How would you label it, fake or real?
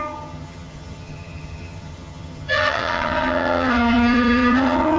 fake